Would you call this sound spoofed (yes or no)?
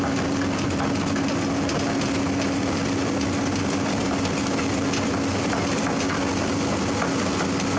no